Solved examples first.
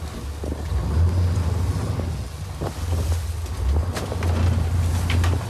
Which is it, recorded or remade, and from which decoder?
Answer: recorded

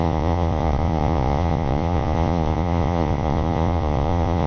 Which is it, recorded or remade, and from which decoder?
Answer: remade, vocoder, Vocos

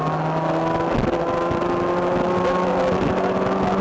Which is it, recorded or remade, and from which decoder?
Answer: recorded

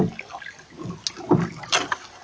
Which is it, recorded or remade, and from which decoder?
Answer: recorded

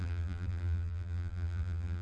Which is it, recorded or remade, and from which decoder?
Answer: remade, vocoder, BigVGAN v2